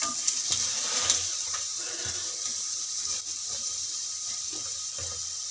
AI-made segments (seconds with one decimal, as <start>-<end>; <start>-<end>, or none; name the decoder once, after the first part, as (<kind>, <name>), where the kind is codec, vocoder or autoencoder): 0.0-2.9 (vocoder, BigVGAN v2); 3.4-4.4